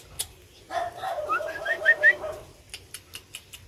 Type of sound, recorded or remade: recorded